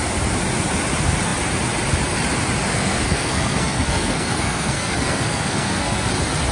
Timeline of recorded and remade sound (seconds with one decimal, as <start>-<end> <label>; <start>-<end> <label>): 0.0-2.7 recorded; 2.7-6.1 remade; 6.1-6.5 recorded